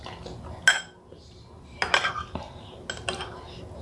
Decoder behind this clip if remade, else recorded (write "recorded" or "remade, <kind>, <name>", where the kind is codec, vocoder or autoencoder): recorded